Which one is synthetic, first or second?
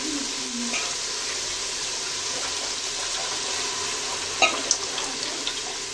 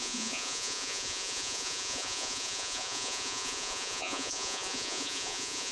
second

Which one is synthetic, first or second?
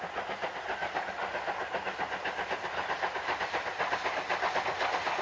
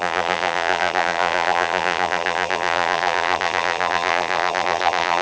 second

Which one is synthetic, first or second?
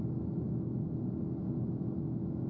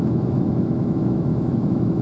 second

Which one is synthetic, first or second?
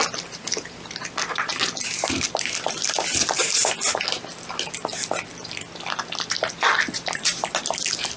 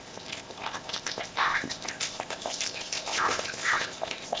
second